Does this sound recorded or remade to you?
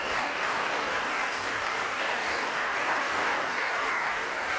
remade